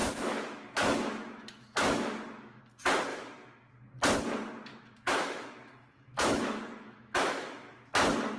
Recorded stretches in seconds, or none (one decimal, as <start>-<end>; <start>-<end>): 2.6-3.1; 3.7-4.7; 7.9-8.4